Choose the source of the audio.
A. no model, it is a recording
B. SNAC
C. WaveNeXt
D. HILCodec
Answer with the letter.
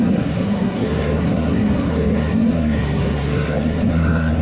B